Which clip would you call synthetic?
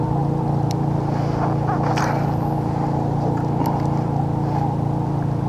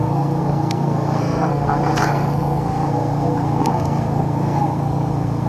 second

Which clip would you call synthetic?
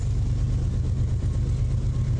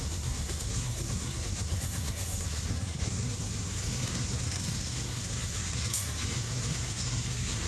second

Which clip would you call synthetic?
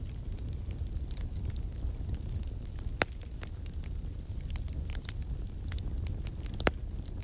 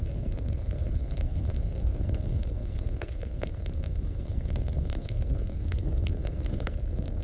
second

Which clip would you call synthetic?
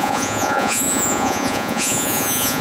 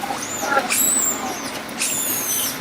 first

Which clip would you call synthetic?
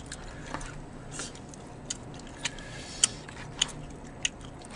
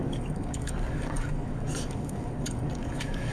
second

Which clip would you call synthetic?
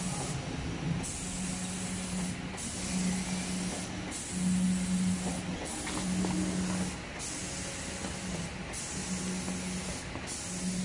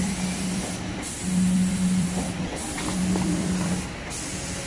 second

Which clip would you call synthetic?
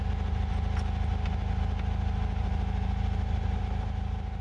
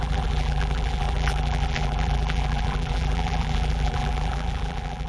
second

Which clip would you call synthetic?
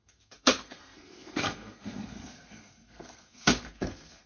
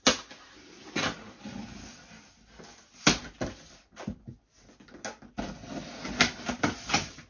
first